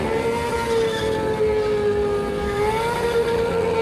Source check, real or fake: real